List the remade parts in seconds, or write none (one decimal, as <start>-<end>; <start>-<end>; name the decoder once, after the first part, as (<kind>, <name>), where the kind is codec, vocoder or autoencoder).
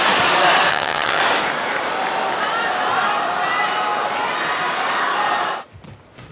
0.7-1.2 (vocoder, HiFi-GAN)